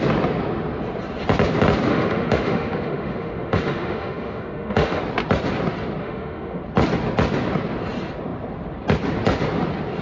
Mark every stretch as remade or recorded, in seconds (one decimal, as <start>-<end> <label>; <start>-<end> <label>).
0.0-1.9 recorded; 1.9-5.0 remade; 5.0-6.0 recorded; 6.0-6.6 remade; 6.6-10.0 recorded